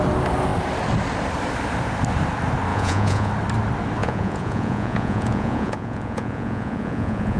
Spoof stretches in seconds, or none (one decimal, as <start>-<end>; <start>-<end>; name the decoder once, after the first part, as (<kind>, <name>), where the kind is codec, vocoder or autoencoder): 2.7-3.3 (vocoder, Vocos); 4.0-7.4